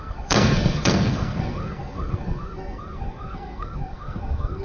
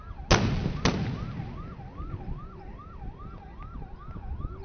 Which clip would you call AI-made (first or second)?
first